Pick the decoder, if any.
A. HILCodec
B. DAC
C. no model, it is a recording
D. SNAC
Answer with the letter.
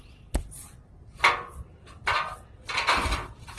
C